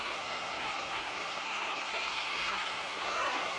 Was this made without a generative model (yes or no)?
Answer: no